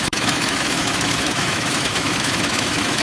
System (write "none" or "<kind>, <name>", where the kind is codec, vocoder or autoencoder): autoencoder, DAC-VAE